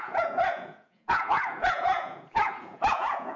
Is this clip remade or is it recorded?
remade